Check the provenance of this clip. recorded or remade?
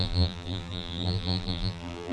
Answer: remade